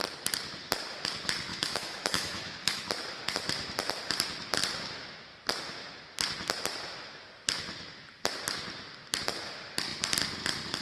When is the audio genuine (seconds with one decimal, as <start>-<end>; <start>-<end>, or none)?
0.0-1.5; 2.9-10.8